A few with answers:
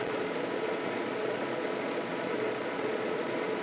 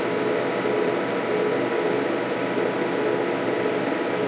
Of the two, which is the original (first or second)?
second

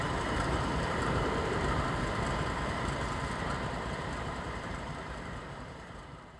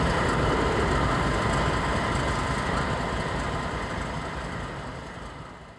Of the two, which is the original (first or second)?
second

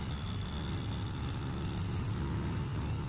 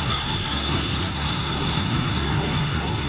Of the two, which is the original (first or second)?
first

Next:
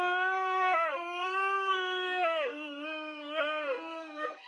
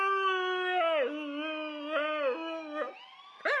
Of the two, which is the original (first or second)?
second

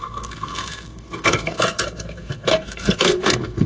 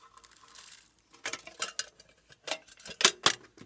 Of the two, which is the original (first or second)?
second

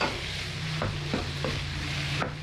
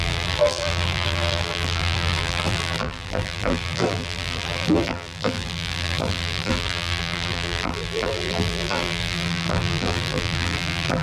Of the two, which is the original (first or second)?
first